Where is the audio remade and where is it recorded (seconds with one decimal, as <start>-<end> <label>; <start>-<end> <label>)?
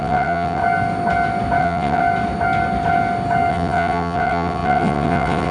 0.0-0.6 remade; 0.6-1.6 recorded; 1.6-2.0 remade; 2.0-3.5 recorded; 3.5-5.5 remade